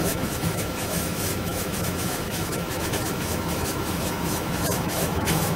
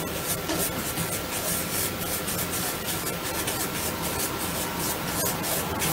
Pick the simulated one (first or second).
first